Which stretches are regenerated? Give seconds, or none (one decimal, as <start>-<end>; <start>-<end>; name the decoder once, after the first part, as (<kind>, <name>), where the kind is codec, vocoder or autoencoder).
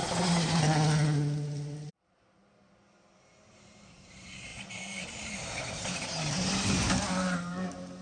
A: 3.5-8.0 (vocoder, BigVGAN v2)